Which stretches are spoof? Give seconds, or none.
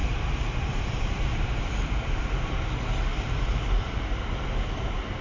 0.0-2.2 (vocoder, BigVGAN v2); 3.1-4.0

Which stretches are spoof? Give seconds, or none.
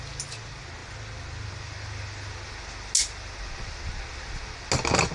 none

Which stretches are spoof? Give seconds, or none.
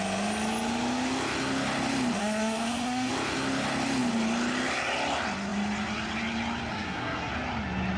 2.2-3.1 (codec, SNAC); 6.7-7.3